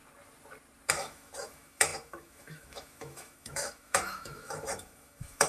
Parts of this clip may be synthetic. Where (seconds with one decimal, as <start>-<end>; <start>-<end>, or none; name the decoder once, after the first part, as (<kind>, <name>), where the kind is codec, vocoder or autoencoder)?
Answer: 0.9-5.5 (autoencoder, DAC-VAE)